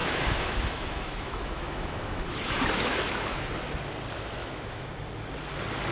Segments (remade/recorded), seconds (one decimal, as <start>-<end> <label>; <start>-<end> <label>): 0.0-3.5 remade; 3.5-4.4 recorded; 4.4-4.9 remade; 4.9-5.9 recorded